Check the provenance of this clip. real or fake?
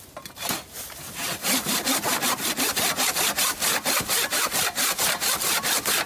real